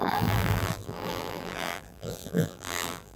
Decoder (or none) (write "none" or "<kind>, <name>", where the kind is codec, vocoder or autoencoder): vocoder, BigVGAN v2